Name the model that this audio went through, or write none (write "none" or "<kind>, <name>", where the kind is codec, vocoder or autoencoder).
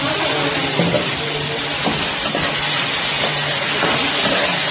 none